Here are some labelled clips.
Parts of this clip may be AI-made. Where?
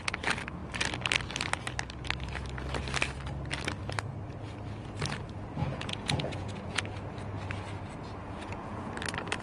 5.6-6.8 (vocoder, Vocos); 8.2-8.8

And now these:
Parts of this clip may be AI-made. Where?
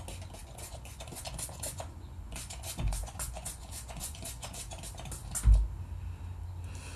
0.4-4.6 (vocoder, Vocos)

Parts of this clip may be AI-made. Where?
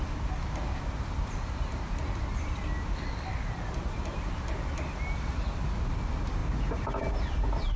none